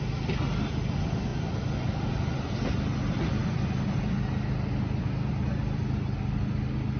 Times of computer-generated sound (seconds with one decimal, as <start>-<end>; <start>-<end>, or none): none